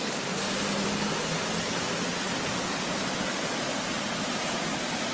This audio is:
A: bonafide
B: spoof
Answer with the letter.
A